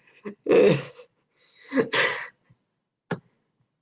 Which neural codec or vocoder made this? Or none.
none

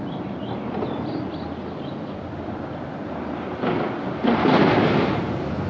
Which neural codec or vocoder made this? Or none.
none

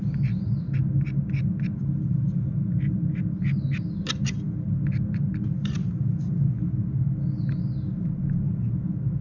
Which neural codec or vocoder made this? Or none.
none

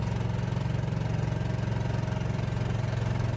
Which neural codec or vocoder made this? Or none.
none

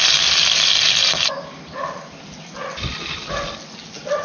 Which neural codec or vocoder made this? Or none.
none